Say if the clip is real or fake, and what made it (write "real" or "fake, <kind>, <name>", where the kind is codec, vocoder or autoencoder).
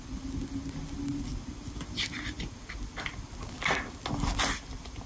real